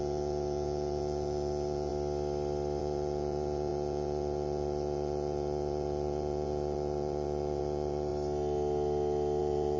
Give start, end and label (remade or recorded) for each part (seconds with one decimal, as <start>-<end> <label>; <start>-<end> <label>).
0.0-1.9 remade; 1.9-2.8 recorded; 2.8-8.1 remade; 8.1-9.4 recorded; 9.4-9.8 remade